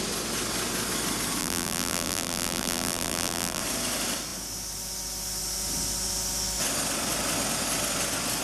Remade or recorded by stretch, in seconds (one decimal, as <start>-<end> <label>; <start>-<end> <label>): 0.0-1.4 recorded; 1.4-3.6 remade; 3.6-8.4 recorded